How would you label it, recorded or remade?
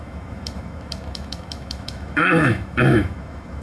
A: remade